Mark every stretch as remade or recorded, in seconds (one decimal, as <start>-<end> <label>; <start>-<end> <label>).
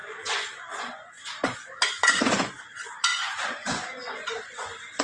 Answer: 0.0-5.0 remade